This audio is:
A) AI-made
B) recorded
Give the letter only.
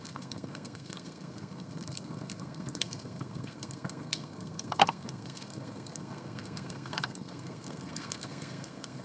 A